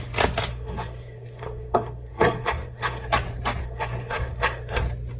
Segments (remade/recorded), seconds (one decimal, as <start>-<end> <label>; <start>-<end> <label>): 0.0-0.5 recorded; 0.5-3.1 remade; 3.1-3.6 recorded; 3.6-4.8 remade; 4.8-5.2 recorded